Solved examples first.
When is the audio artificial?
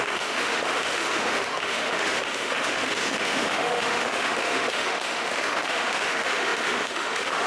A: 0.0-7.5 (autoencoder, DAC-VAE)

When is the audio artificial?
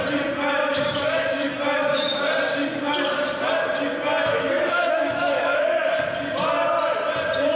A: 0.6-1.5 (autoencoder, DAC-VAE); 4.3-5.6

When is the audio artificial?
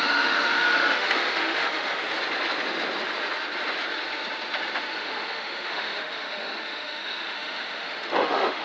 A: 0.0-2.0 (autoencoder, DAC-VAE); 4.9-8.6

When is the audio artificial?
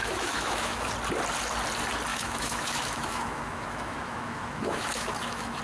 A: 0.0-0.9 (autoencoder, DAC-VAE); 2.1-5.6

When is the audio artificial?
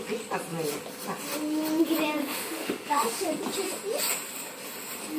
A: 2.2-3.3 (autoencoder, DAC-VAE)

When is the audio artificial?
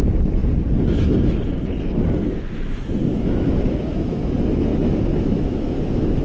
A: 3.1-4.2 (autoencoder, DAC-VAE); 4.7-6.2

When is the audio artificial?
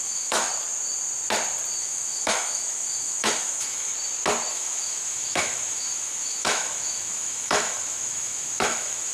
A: 0.0-0.5 (autoencoder, DAC-VAE); 1.8-3.9; 4.5-9.1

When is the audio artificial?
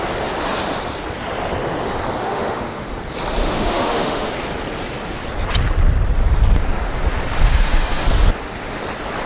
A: 2.2-2.9 (autoencoder, DAC-VAE); 3.4-4.3; 7.4-8.0